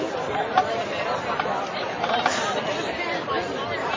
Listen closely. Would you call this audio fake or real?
fake